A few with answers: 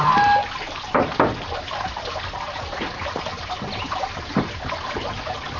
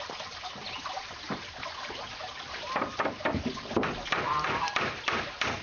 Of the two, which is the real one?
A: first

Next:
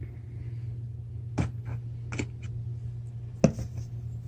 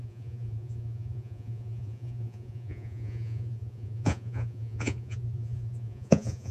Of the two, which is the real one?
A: first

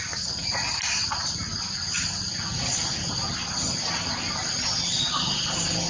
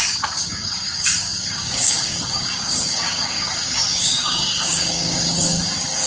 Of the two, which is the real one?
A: first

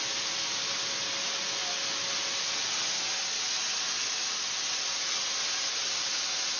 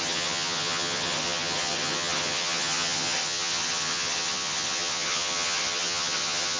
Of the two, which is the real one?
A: first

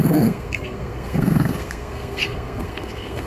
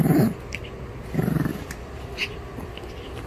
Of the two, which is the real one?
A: second